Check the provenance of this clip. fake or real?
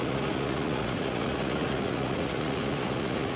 fake